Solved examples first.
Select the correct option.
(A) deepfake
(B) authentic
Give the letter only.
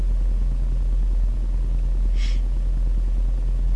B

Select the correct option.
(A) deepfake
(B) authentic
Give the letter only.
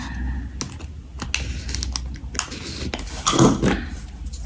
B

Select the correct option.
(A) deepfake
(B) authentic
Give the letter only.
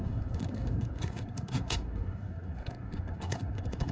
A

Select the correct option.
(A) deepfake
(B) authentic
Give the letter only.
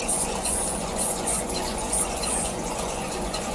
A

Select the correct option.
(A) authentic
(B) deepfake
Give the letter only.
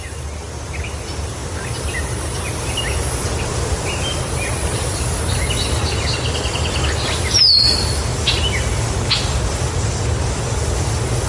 A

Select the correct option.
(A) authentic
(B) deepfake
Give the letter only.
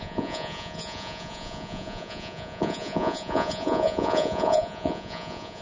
B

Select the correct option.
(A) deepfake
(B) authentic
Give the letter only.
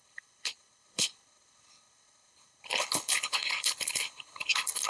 A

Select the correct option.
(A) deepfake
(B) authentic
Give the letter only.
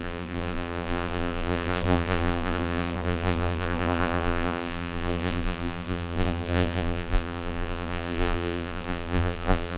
A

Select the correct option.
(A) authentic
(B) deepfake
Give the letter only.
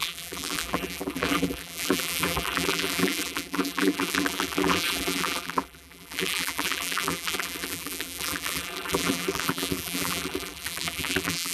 B